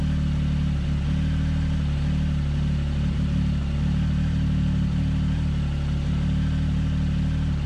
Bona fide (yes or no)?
yes